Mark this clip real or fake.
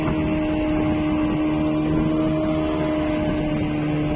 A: real